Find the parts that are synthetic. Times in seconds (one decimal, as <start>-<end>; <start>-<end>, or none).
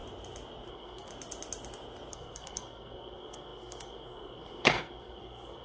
0.7-1.1; 2.1-5.6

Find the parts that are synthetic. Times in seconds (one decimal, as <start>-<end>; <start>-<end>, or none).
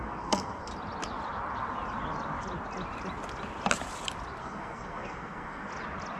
0.0-0.7; 4.4-5.7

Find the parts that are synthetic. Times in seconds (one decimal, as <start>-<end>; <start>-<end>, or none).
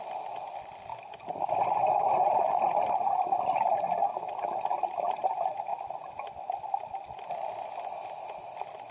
none